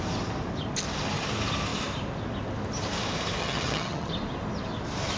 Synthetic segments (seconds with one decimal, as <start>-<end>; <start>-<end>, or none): 3.4-4.1

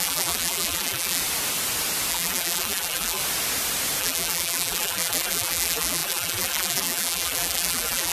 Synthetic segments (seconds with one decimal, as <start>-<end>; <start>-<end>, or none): 0.0-1.2; 2.1-3.2; 4.0-8.1

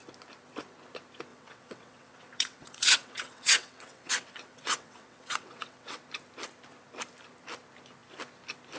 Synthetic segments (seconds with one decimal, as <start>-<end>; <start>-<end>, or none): 1.3-6.0

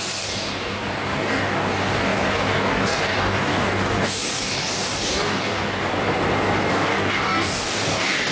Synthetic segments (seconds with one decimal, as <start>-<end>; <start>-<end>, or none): 0.0-5.9; 6.7-8.3

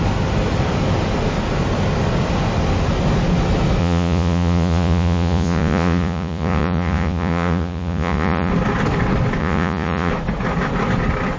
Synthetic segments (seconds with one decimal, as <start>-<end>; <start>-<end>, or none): 3.8-8.5; 9.4-10.1

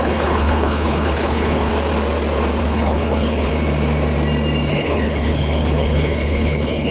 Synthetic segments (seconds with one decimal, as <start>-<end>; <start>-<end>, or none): 0.0-1.7; 2.6-3.5; 4.7-6.9